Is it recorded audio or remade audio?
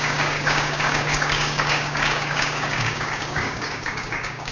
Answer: remade